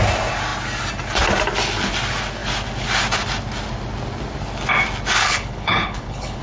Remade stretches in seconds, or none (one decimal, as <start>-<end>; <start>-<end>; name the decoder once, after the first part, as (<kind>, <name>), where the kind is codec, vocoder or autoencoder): 5.2-6.4 (codec, HILCodec)